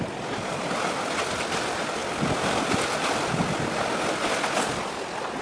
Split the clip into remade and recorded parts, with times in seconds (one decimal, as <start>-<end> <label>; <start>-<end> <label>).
0.0-5.4 recorded

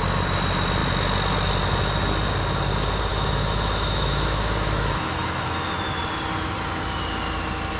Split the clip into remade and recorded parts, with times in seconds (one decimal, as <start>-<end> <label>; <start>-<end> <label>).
0.0-3.1 recorded; 3.1-6.0 remade; 6.0-7.8 recorded

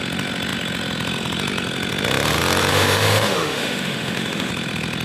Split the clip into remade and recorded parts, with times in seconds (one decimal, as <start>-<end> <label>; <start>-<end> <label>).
0.0-2.7 recorded; 2.7-4.5 remade; 4.5-5.0 recorded

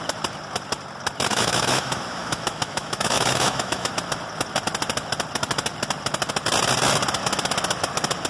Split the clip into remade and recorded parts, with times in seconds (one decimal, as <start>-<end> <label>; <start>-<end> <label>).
0.0-1.3 recorded; 1.3-3.9 remade; 3.9-8.3 recorded

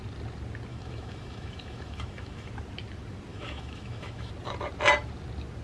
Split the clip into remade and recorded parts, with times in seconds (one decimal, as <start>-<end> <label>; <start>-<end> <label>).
0.0-0.7 recorded; 0.7-2.5 remade; 2.5-3.3 recorded; 3.3-4.3 remade; 4.3-5.6 recorded

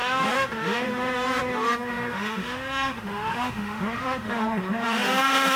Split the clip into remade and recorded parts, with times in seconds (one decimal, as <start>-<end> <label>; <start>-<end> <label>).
0.0-5.6 remade

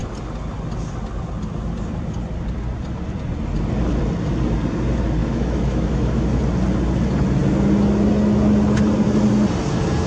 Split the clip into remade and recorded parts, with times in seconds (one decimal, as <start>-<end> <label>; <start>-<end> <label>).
0.0-5.2 recorded; 5.2-6.4 remade; 6.4-10.1 recorded

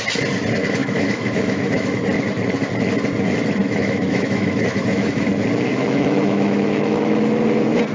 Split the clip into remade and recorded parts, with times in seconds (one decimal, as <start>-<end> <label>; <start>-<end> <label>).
0.0-0.8 recorded; 0.8-2.0 remade; 2.0-3.6 recorded; 3.6-5.3 remade; 5.3-5.7 recorded; 5.7-7.0 remade; 7.0-7.9 recorded